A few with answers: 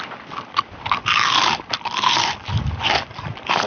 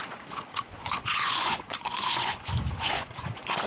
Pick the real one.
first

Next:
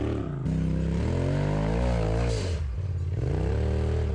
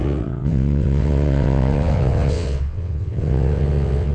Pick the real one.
first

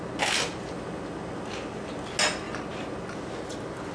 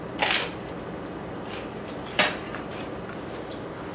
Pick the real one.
first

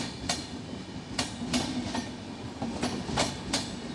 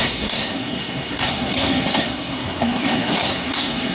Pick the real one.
first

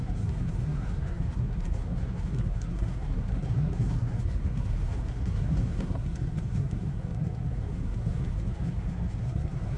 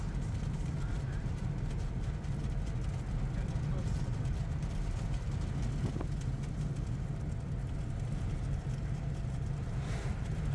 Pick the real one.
second